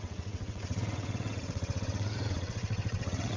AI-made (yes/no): yes